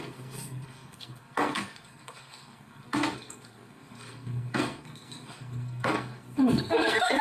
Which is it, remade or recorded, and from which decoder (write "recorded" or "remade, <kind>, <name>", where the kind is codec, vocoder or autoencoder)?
remade, codec, SNAC